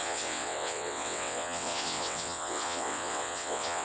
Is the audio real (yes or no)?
no